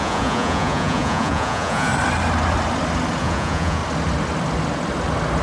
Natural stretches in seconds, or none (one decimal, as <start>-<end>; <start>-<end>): 1.9-3.2; 3.8-5.4